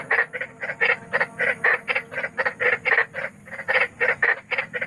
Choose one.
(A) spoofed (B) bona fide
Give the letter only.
B